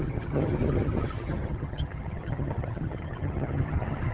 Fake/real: fake